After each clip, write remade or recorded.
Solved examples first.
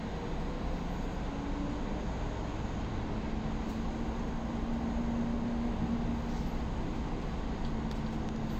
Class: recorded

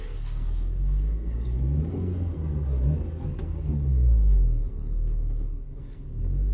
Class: remade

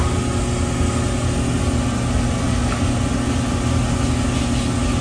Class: recorded